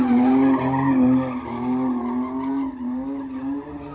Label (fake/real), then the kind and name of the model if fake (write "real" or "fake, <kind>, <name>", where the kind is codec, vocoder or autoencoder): real